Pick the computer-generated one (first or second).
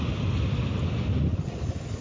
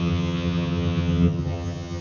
second